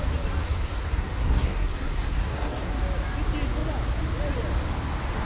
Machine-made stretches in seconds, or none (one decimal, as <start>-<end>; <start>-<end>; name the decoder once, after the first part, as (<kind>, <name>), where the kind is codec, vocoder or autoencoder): 0.4-2.7 (codec, SNAC)